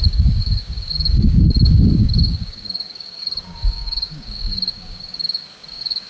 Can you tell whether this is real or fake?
fake